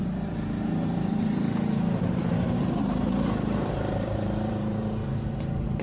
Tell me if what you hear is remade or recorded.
remade